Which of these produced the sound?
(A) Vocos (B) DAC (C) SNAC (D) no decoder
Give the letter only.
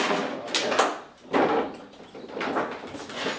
D